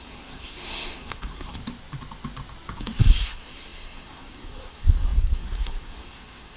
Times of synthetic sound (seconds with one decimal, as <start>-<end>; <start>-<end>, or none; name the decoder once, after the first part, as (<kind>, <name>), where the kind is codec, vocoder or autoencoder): 0.0-1.6 (codec, SNAC); 2.8-6.6